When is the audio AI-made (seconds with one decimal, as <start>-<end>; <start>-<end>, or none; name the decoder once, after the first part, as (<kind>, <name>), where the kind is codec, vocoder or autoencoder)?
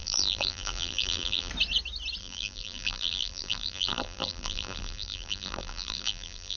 0.0-1.5 (vocoder, BigVGAN v2); 2.2-6.6